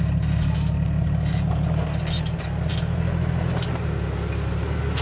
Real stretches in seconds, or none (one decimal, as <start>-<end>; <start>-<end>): 0.0-5.0